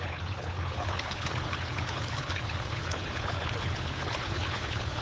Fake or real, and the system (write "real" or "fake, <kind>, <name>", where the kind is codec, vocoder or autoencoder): fake, codec, HILCodec